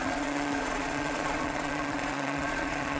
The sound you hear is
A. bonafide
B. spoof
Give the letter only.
B